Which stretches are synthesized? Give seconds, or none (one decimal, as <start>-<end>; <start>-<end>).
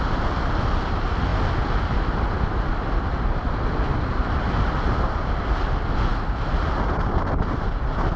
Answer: none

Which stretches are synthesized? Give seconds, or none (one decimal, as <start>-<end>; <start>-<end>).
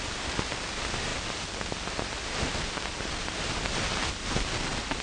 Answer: none